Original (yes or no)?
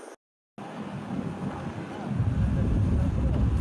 yes